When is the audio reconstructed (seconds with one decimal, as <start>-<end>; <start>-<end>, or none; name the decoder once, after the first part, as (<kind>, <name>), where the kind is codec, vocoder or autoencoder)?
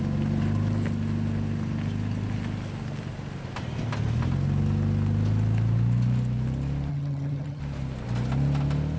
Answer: 6.9-7.6 (vocoder, HiFi-GAN)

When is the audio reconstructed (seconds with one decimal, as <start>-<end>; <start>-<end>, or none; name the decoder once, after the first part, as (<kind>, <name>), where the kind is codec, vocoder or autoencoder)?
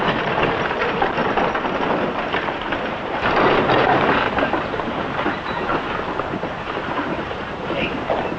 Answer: 0.0-1.2 (vocoder, BigVGAN v2); 2.2-5.7; 6.3-8.4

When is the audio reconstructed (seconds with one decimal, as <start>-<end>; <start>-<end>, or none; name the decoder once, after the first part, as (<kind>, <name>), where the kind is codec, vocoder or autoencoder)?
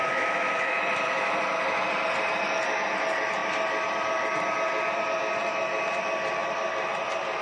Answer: 0.0-0.7 (autoencoder, DAC-VAE)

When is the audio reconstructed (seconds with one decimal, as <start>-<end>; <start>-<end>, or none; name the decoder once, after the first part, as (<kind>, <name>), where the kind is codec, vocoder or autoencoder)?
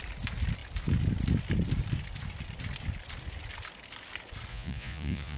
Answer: 4.5-5.4 (vocoder, Vocos)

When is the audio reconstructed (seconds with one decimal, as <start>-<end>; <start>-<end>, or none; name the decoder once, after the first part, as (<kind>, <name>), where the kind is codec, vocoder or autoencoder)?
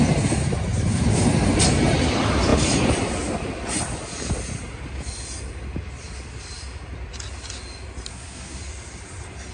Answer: 8.1-8.6 (codec, SNAC)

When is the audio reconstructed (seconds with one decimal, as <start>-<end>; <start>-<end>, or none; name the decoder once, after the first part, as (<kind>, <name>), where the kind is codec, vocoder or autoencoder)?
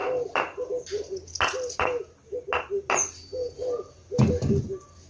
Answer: none